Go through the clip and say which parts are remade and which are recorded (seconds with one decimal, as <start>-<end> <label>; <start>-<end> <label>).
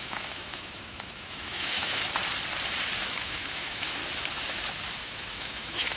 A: 0.0-2.0 remade; 2.0-3.0 recorded; 3.0-4.0 remade; 4.0-5.0 recorded; 5.0-6.0 remade